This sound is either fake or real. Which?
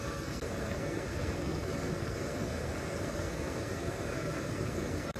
fake